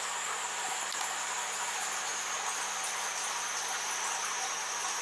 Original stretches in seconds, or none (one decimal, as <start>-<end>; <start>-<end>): 0.0-5.0